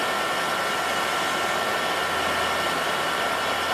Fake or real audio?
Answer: real